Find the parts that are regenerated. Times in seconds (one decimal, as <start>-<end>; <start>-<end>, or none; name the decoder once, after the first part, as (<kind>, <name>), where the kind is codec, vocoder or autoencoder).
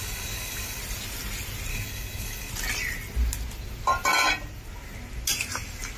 0.0-0.8 (codec, DAC); 1.7-2.5